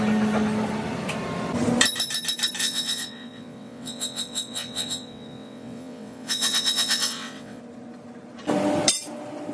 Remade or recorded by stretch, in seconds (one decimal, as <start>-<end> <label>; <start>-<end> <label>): 0.0-2.6 recorded; 2.6-7.6 remade; 7.6-9.5 recorded